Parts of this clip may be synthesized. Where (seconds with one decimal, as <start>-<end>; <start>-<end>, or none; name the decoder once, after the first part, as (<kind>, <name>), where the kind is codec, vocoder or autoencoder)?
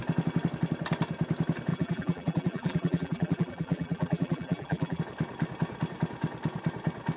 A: 1.7-5.0 (vocoder, BigVGAN v2)